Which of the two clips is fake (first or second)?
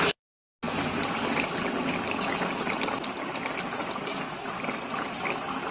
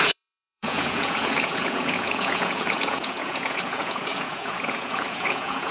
second